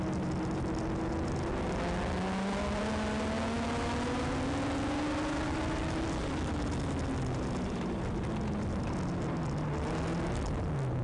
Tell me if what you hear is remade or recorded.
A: recorded